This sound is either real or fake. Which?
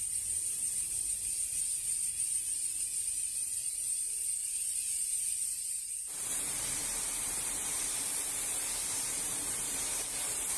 fake